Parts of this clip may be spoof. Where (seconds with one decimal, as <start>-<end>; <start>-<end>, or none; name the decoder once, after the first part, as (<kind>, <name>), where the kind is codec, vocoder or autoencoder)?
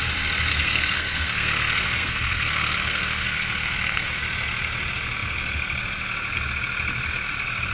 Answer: 0.5-4.2 (codec, SNAC)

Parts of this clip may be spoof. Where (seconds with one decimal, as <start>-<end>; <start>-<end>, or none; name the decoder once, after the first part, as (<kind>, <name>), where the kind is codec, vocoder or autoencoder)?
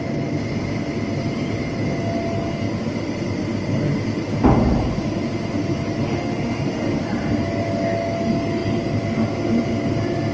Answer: 6.1-7.0 (autoencoder, DAC-VAE)